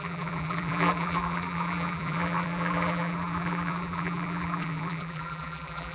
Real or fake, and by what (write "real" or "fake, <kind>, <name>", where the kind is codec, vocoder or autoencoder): fake, vocoder, BigVGAN v2